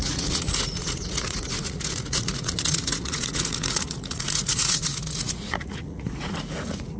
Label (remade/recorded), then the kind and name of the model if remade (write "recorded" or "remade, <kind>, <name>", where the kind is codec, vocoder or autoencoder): remade, vocoder, Vocos